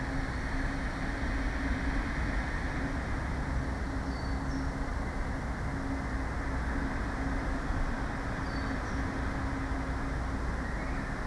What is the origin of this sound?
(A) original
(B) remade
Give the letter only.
A